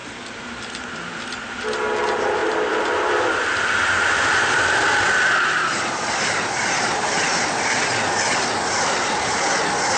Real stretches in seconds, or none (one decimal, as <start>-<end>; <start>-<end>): 0.9-2.4; 3.7-4.3; 8.2-10.0